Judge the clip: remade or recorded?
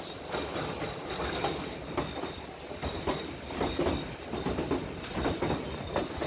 recorded